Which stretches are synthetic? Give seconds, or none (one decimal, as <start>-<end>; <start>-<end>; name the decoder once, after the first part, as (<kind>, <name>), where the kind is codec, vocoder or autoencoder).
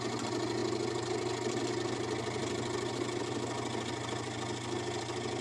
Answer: none